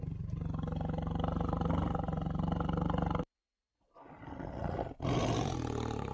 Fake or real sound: real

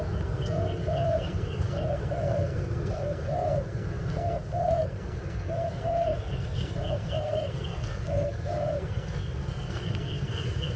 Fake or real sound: fake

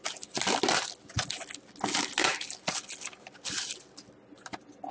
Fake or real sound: real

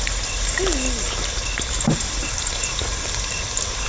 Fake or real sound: real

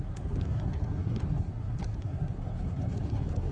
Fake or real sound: fake